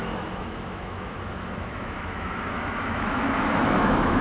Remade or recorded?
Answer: remade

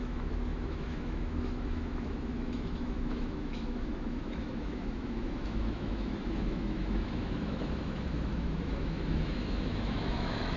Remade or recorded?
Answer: remade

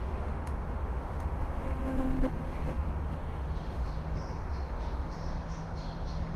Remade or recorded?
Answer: remade